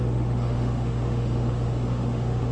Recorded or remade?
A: remade